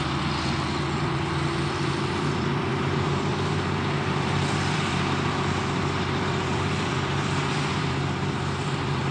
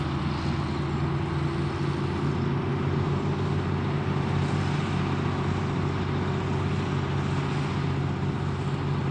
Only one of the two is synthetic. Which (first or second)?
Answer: first